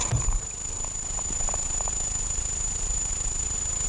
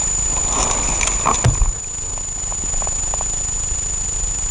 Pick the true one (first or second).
second